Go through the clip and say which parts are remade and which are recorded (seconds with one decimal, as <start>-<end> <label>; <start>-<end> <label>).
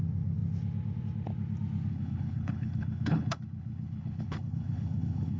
0.0-1.9 recorded; 1.9-5.4 remade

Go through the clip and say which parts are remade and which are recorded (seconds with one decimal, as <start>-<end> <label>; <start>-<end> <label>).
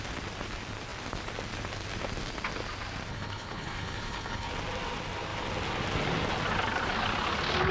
0.0-3.1 recorded; 3.1-4.5 remade; 4.5-7.7 recorded